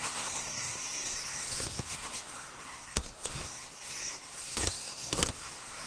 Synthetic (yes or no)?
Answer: yes